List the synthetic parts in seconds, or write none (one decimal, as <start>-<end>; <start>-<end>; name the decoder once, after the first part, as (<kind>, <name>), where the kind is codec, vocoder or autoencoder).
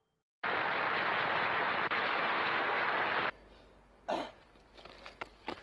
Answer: 2.2-2.8 (codec, SNAC)